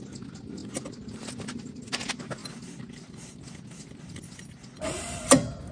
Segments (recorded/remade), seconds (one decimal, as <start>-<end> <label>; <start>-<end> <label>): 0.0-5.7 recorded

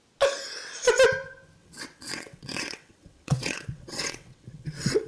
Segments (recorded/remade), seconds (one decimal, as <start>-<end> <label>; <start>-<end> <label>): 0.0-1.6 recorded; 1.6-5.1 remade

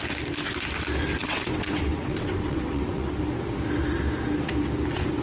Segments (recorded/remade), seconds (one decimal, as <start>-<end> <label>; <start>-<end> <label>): 0.0-1.2 recorded; 1.2-3.2 remade; 3.2-5.2 recorded

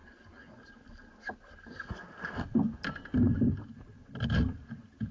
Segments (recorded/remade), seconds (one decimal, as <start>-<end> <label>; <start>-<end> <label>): 0.0-5.1 recorded

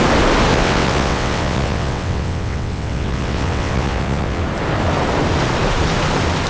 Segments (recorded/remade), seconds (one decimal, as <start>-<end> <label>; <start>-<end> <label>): 0.0-0.5 recorded; 0.5-4.4 remade; 4.4-6.5 recorded